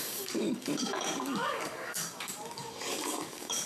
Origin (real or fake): fake